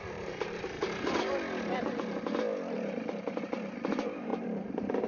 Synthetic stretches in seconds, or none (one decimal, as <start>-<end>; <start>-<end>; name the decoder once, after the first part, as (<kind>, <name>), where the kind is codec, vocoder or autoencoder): 0.0-0.8 (vocoder, BigVGAN v2); 3.9-5.1